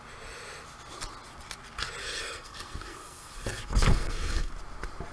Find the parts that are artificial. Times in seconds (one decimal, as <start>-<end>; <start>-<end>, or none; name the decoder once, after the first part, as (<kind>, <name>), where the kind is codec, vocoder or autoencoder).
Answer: 2.0-4.5 (codec, SNAC)